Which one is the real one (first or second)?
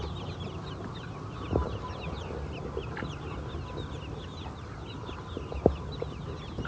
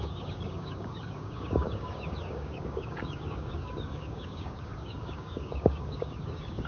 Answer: first